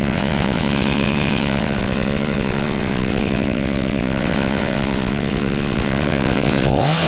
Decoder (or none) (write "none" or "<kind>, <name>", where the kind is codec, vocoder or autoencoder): vocoder, WaveNeXt